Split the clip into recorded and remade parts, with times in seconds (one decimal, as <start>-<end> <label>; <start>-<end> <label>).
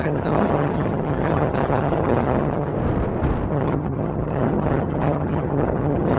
0.0-2.7 remade; 2.7-3.5 recorded; 3.5-6.2 remade